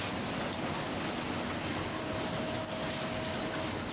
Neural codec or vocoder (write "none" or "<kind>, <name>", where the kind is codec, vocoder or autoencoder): none